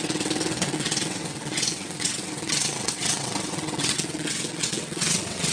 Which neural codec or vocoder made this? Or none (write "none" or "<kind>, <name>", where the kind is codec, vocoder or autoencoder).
vocoder, WaveNeXt